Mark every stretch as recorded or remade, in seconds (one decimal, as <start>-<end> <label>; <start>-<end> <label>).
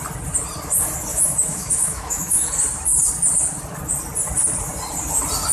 0.0-1.1 recorded; 1.1-2.5 remade; 2.5-5.5 recorded